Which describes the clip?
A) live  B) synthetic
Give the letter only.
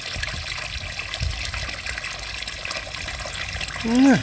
A